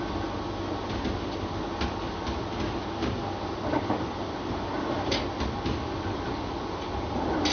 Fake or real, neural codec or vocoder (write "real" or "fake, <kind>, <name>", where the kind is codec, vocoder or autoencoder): real